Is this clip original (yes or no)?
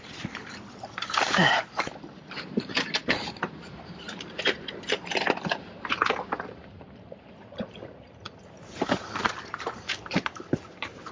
no